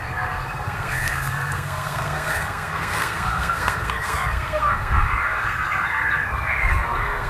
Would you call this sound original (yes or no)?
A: no